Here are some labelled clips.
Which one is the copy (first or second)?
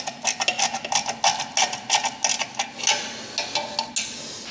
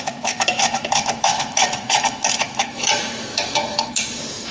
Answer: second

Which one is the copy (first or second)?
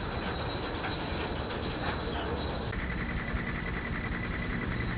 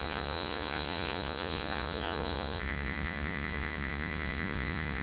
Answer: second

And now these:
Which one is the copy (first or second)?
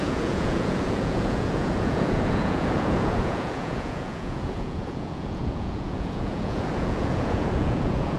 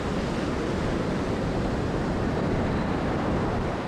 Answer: first